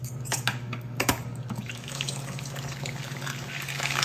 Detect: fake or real fake